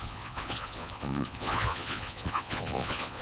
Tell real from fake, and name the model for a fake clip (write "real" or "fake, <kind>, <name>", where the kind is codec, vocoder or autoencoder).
fake, vocoder, Vocos